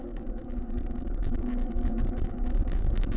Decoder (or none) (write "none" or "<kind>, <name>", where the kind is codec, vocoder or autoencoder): codec, DAC